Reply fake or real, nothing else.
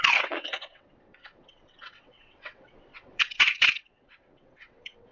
fake